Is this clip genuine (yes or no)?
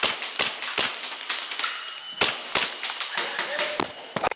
yes